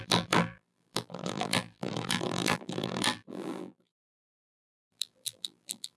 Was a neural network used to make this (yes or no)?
yes